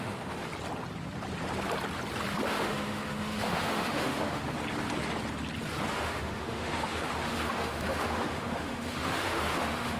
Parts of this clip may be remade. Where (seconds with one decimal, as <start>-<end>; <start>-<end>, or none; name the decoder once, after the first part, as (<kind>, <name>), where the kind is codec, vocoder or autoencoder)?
0.0-0.5 (autoencoder, DAC-VAE); 2.5-4.4; 5.9-10.0

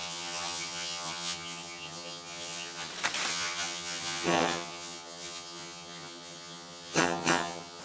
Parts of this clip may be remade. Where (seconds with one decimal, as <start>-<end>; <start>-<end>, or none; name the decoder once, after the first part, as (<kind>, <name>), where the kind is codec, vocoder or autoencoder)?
0.0-2.9 (vocoder, HiFi-GAN); 3.3-7.8